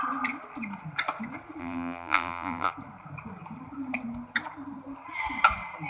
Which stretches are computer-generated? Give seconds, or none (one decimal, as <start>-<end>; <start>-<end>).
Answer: 1.6-2.7

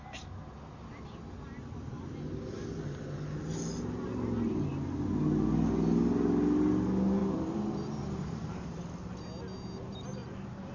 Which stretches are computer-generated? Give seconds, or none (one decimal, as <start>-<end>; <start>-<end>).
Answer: 7.2-9.0; 10.2-10.7

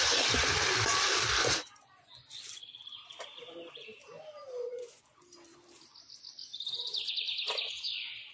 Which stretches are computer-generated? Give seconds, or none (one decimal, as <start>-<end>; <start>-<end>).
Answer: 1.4-2.3; 4.6-5.2; 6.5-7.1

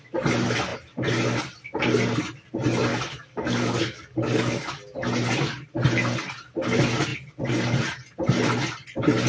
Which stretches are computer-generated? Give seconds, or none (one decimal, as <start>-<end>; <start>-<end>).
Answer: 2.9-4.8

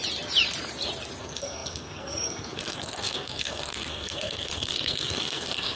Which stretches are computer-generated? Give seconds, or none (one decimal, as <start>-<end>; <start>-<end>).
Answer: 1.2-5.8